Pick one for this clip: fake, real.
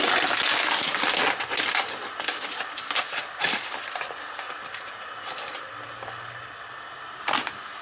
real